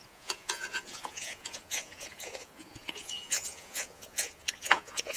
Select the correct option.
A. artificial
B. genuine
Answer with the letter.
A